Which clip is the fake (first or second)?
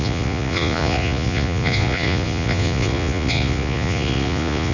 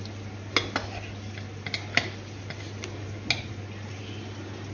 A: first